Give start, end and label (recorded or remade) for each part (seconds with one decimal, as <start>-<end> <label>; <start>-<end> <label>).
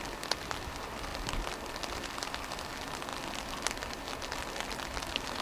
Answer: 0.0-5.4 recorded